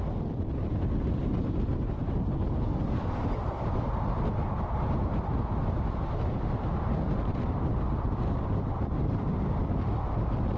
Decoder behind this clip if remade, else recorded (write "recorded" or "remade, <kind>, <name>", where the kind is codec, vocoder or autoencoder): recorded